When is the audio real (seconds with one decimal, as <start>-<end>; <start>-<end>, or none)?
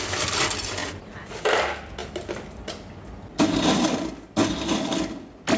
0.0-0.8; 1.4-5.6